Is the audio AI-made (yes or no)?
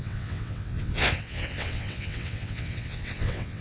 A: yes